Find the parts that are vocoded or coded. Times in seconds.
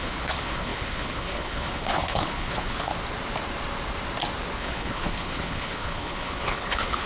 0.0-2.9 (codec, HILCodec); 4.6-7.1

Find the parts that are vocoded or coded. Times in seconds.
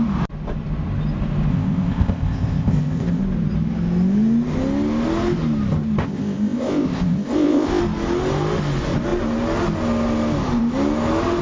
1.5-3.2 (codec, ZipCodec); 6.0-7.8